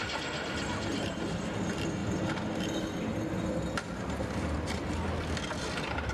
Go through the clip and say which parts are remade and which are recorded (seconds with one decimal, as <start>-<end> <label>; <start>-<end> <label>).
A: 0.0-0.9 recorded; 0.9-1.4 remade; 1.4-6.1 recorded